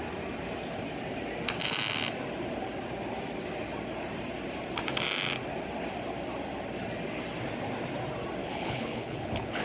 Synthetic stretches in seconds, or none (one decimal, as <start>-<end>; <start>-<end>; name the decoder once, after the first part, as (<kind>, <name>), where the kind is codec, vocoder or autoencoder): 8.4-9.6 (codec, HILCodec)